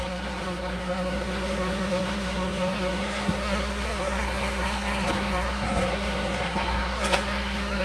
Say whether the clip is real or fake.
fake